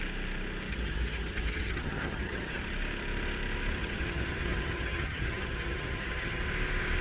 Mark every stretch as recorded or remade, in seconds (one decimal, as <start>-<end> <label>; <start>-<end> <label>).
0.0-0.7 recorded; 0.7-2.6 remade; 2.6-3.8 recorded; 3.8-6.4 remade; 6.4-7.0 recorded